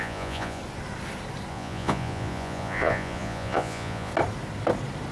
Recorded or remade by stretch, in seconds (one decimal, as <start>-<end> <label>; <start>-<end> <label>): 0.0-0.6 remade; 0.6-1.5 recorded; 1.5-4.1 remade; 4.1-5.1 recorded